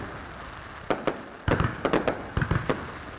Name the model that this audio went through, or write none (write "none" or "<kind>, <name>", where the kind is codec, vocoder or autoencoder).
none